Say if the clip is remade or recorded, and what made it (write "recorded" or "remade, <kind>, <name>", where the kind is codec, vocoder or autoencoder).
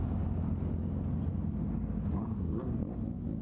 recorded